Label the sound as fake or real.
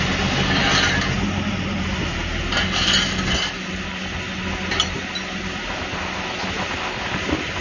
real